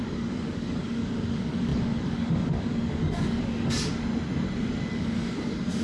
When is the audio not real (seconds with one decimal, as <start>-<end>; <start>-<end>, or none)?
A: 0.0-3.9; 4.9-5.8